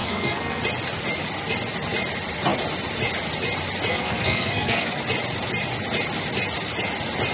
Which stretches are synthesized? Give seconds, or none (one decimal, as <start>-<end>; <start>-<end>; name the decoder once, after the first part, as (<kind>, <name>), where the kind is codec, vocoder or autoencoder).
0.0-0.6 (codec, SNAC); 3.9-4.9